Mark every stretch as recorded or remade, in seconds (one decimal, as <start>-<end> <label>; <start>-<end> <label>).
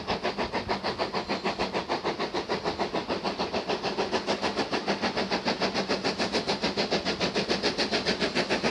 0.0-8.7 recorded